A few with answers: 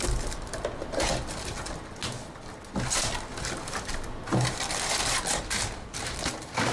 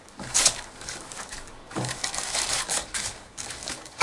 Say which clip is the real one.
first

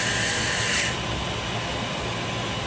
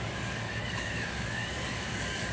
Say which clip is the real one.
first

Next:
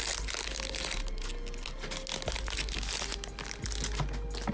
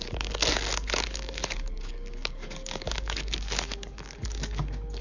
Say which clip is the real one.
first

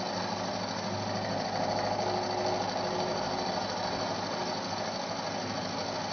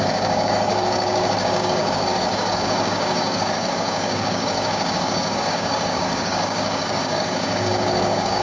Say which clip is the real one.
first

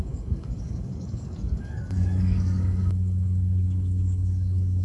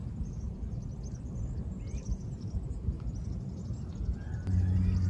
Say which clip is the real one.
second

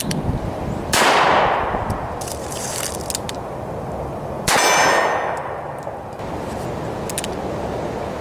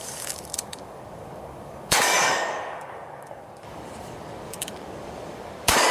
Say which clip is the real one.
first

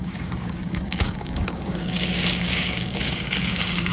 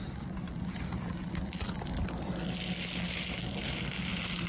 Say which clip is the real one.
second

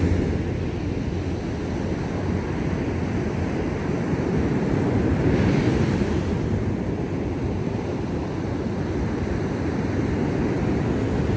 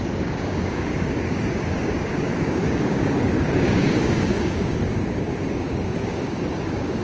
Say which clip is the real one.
first